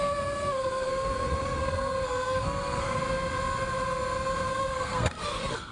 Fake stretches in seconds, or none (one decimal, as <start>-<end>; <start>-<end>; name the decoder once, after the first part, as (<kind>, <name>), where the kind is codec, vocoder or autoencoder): 0.0-3.0 (codec, SNAC); 4.5-5.7